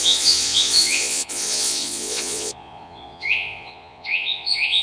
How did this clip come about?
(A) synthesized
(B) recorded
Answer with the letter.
A